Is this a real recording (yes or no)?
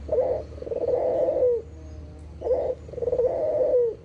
yes